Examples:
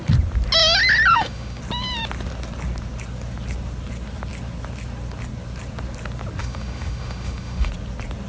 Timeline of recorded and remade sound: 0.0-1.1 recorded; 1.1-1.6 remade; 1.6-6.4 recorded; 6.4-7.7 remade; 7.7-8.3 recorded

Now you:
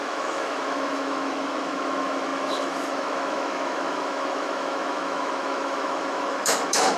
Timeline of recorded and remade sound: 0.0-7.0 remade

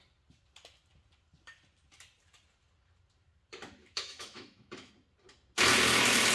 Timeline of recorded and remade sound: 0.0-3.8 recorded; 3.8-4.9 remade; 4.9-6.3 recorded

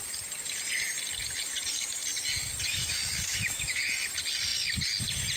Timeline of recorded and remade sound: 0.0-2.7 recorded; 2.7-3.8 remade; 3.8-5.4 recorded

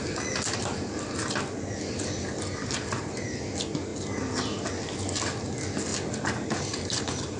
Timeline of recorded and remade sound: 0.0-7.4 recorded

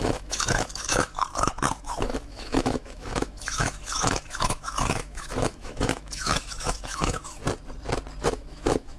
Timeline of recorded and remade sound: 0.0-7.4 remade; 7.4-8.2 recorded; 8.2-9.0 remade